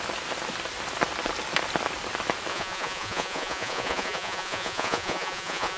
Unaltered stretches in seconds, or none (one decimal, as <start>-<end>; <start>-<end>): 0.0-2.5